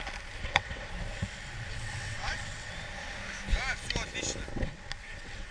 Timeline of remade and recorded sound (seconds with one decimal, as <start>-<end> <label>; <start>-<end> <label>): 0.0-0.4 recorded; 0.4-0.9 remade; 0.9-1.7 recorded; 1.7-2.7 remade; 2.7-4.5 recorded; 4.5-5.5 remade